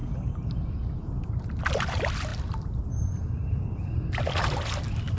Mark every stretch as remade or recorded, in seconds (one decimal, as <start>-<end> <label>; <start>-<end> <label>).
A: 0.0-0.7 recorded; 0.7-5.2 remade

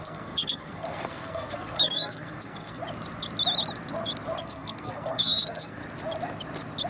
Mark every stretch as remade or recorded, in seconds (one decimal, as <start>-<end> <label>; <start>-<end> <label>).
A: 0.0-2.8 remade; 2.8-4.4 recorded; 4.4-5.8 remade; 5.8-6.9 recorded

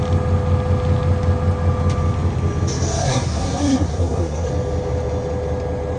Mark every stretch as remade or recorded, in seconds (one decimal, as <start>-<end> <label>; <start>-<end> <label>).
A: 0.0-3.0 recorded; 3.0-4.5 remade; 4.5-6.0 recorded

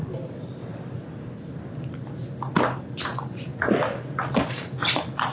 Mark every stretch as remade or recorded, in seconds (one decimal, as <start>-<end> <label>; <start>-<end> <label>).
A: 0.0-5.3 recorded

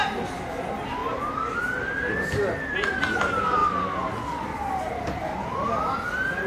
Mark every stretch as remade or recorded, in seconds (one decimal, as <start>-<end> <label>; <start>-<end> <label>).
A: 0.0-6.5 recorded

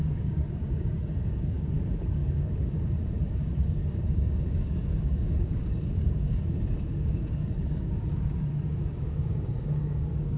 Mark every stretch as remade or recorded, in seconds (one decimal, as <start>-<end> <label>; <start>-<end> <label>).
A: 0.0-10.4 remade